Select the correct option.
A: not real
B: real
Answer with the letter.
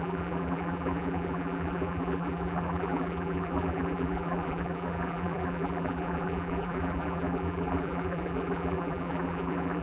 A